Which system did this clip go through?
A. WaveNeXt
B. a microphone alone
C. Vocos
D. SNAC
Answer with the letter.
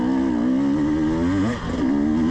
B